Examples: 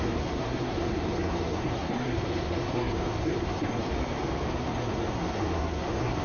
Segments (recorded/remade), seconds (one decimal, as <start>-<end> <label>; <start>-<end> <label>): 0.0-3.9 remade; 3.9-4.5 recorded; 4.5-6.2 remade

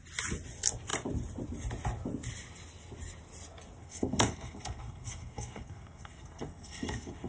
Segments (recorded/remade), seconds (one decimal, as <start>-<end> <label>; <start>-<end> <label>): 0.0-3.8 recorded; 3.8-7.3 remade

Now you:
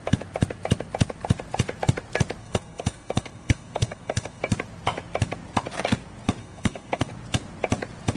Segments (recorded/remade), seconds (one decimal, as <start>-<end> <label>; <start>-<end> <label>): 0.0-2.4 recorded; 2.4-4.4 remade; 4.4-6.4 recorded; 6.4-7.1 remade; 7.1-8.2 recorded